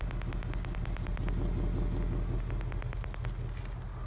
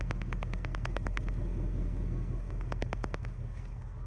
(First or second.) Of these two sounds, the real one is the first